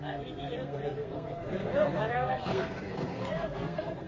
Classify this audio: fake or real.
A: fake